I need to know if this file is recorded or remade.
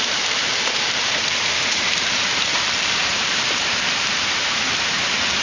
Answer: remade